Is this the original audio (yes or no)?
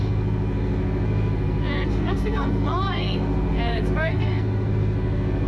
no